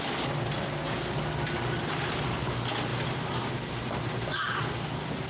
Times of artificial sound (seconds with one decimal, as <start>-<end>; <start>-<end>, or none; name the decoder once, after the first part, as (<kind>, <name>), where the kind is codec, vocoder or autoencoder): 2.9-3.9 (vocoder, BigVGAN v2)

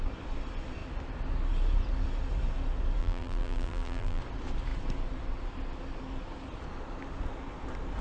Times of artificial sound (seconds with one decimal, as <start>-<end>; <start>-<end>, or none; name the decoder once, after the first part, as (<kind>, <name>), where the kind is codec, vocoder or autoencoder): 3.0-4.2 (vocoder, BigVGAN v2)

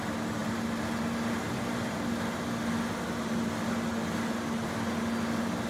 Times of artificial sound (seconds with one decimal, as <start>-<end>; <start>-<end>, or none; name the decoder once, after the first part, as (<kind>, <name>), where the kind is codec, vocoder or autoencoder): none

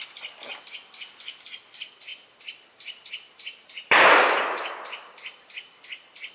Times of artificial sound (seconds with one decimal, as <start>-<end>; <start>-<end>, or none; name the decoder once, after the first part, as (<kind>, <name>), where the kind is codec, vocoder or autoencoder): 0.0-0.5 (vocoder, BigVGAN v2); 1.6-6.3

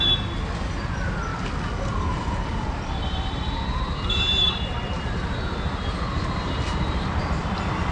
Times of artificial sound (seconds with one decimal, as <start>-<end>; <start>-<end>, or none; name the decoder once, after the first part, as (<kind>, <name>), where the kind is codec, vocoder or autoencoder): 1.3-5.1 (vocoder, BigVGAN v2); 6.7-7.9

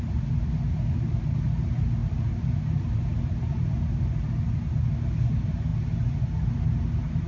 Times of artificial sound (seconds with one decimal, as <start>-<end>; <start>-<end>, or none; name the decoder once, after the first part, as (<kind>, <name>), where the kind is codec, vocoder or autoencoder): 2.0-3.8 (vocoder, BigVGAN v2)

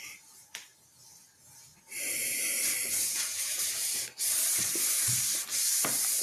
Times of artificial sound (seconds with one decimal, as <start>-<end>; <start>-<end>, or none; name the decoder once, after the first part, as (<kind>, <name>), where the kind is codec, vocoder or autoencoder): none

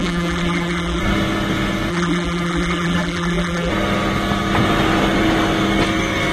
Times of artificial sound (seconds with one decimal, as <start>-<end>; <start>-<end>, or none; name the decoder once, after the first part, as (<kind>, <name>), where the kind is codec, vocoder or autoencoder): 0.0-1.0 (vocoder, BigVGAN v2); 1.9-3.7